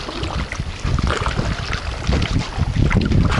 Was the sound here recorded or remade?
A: recorded